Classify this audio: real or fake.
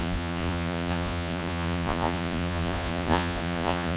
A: fake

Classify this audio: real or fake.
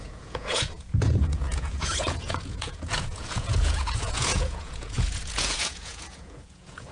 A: fake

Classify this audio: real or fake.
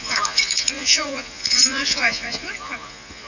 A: fake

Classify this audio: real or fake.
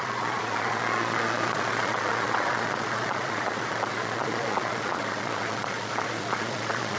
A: fake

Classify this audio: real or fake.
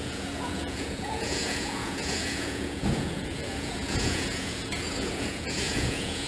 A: fake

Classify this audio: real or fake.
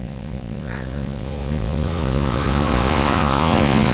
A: fake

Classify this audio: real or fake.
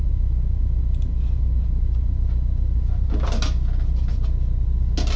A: real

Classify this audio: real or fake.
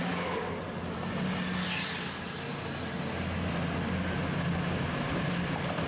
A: real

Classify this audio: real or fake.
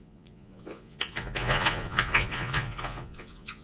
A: fake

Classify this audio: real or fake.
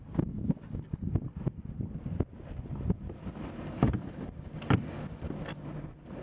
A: real